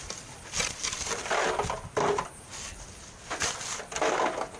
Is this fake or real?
real